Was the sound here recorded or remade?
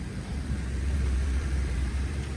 remade